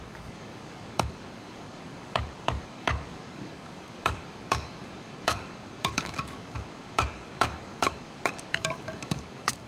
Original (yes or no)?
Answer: no